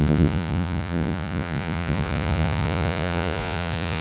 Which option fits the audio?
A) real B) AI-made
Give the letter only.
B